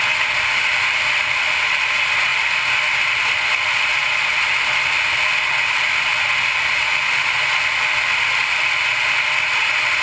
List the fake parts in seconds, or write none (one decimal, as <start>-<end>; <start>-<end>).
none